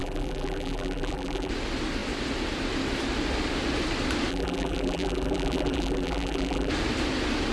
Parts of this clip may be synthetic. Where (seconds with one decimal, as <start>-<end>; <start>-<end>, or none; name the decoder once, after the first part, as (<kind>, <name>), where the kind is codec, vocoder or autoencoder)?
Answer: 0.0-1.5 (vocoder, BigVGAN v2); 4.3-6.7